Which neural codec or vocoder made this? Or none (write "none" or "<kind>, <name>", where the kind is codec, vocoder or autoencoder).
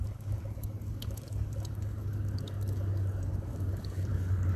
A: codec, DAC